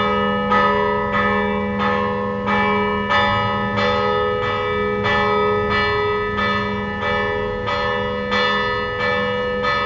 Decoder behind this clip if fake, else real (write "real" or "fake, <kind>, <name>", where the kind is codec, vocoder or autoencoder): real